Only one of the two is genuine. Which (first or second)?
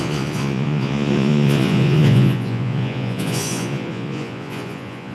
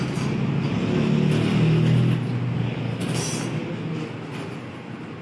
second